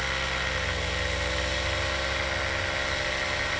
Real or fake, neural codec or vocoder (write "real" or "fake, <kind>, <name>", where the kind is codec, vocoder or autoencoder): real